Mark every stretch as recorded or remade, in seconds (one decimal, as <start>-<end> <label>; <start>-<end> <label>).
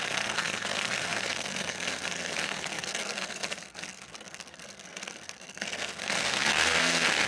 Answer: 0.0-7.3 remade